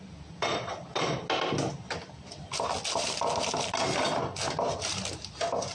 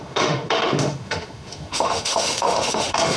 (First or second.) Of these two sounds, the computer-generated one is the second